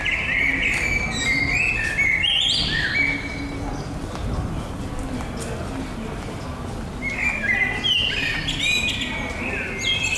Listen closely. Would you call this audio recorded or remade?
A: recorded